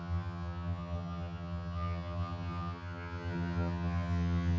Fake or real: fake